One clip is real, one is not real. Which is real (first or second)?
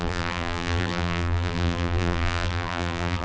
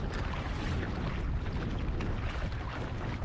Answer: second